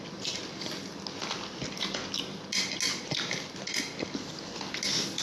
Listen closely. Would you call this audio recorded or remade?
recorded